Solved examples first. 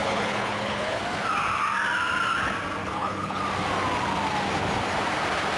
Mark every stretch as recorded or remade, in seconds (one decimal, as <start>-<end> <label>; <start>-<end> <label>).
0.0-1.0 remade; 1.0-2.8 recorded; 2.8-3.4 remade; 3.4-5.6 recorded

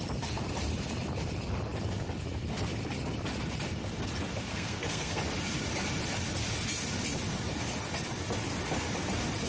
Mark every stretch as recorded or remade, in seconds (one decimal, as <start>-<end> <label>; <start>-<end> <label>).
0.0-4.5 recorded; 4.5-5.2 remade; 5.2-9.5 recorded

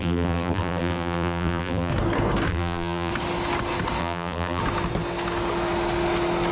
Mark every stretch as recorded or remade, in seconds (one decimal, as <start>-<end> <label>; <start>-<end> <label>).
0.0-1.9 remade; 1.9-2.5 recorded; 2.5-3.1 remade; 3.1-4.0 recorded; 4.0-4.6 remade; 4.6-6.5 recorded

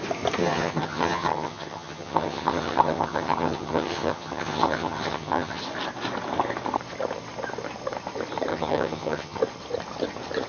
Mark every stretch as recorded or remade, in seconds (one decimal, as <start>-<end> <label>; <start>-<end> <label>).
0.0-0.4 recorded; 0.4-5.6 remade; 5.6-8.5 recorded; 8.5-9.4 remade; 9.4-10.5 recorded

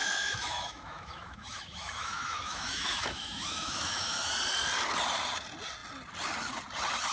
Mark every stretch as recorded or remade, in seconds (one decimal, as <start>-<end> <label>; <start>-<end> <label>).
0.0-4.3 remade; 4.3-7.1 recorded

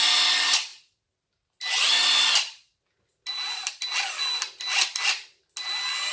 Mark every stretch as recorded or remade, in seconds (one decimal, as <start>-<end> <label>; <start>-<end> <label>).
0.0-6.1 recorded